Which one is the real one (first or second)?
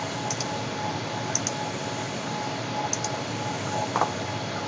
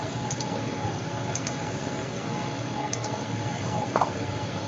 first